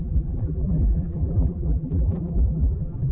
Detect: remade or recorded remade